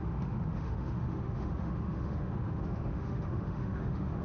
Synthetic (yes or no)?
yes